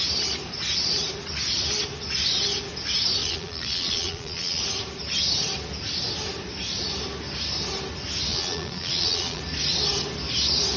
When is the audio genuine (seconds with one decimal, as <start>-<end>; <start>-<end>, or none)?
0.0-3.2; 4.6-8.3; 9.4-10.8